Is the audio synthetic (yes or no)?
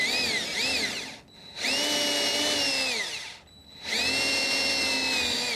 no